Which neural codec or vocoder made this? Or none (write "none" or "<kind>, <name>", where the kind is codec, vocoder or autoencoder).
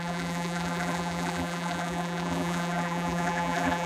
vocoder, BigVGAN v2